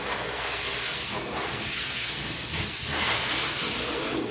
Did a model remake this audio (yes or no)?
yes